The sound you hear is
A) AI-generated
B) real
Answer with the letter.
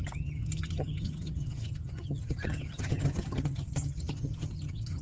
A